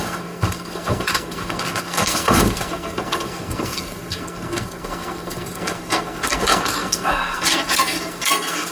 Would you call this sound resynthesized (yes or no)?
yes